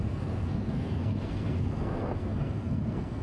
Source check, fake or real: fake